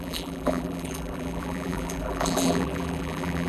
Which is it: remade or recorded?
remade